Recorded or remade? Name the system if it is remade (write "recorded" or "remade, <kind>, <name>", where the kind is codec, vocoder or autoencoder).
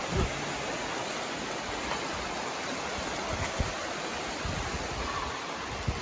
recorded